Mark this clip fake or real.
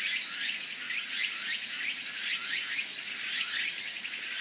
fake